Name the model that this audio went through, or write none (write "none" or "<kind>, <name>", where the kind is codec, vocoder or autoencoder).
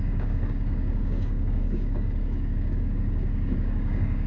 codec, DAC